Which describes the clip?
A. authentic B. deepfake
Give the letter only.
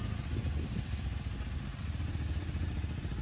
A